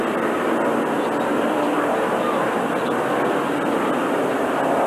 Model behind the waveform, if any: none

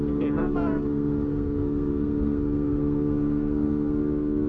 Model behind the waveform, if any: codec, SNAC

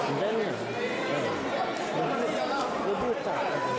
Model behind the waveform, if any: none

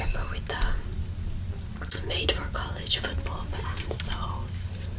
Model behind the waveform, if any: none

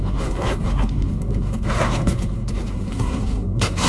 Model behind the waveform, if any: codec, SNAC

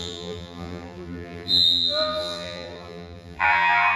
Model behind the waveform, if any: vocoder, BigVGAN v2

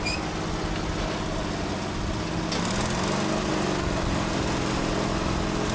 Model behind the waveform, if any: none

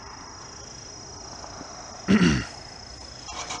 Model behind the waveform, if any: none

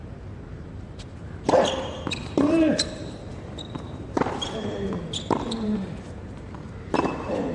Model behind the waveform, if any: vocoder, BigVGAN v2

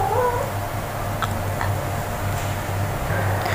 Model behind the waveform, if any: none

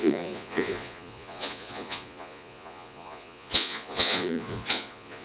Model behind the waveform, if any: vocoder, Vocos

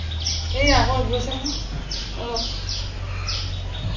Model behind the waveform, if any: none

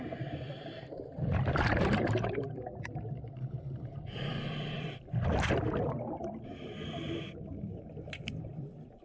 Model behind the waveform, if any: vocoder, BigVGAN v2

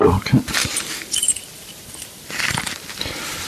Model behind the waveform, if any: vocoder, BigVGAN v2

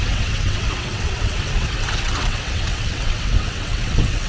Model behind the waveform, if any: vocoder, WaveNeXt